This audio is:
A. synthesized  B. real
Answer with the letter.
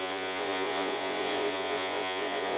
A